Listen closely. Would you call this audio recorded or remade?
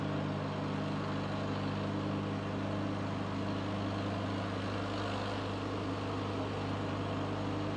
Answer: recorded